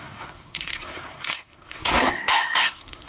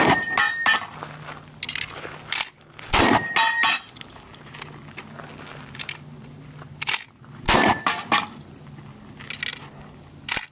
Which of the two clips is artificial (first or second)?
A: first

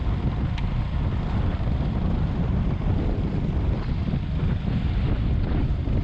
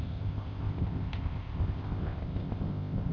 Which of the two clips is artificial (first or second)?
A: second